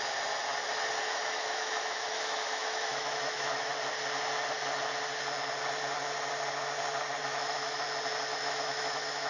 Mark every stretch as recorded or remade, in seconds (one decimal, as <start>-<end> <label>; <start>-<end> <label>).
0.0-1.0 recorded; 1.0-3.7 remade; 3.7-7.2 recorded; 7.2-7.8 remade; 7.8-8.3 recorded; 8.3-9.3 remade